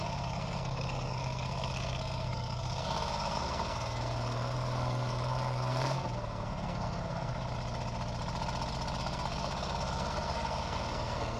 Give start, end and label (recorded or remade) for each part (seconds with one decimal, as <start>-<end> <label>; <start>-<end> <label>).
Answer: 0.0-7.3 remade; 7.3-9.0 recorded; 9.0-11.4 remade